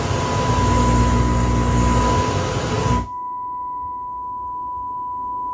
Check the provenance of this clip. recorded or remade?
recorded